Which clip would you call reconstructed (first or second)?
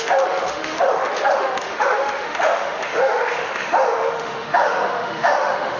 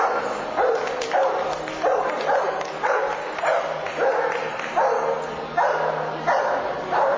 first